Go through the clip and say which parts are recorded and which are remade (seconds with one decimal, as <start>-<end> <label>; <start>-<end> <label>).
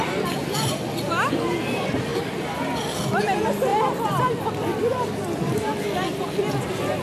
0.0-7.0 recorded